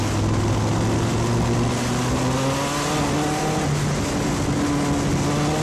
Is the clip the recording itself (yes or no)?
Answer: yes